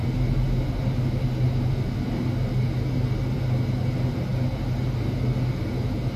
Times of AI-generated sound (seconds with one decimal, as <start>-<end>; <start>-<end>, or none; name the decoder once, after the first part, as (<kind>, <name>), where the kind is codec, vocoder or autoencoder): none